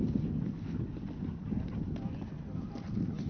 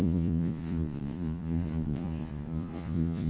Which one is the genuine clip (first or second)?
first